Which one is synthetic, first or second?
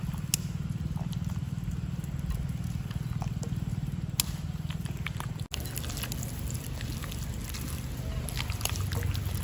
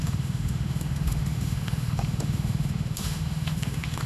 second